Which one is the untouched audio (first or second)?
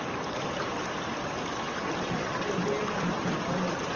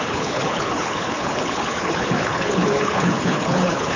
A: first